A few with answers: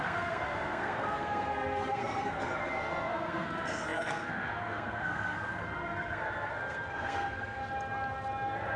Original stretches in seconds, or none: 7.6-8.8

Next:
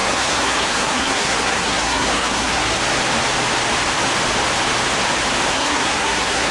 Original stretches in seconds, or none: 2.8-5.5

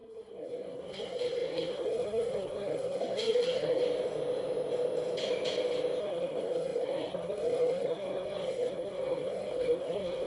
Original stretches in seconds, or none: 3.8-6.0

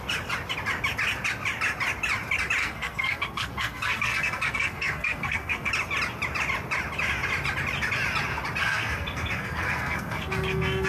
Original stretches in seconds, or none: 0.0-2.6; 5.7-8.6

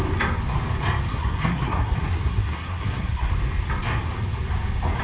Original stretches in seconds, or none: 0.0-1.1; 3.3-5.0

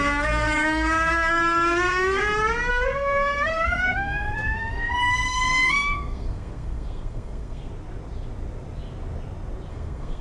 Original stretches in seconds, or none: 2.2-2.7; 7.7-9.7

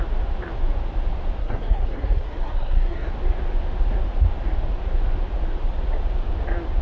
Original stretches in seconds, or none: 0.0-1.4; 3.1-6.8

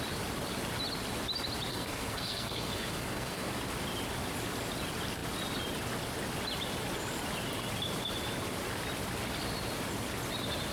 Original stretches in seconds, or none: 0.0-1.7; 3.5-10.7